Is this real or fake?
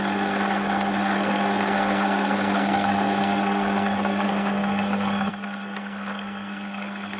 fake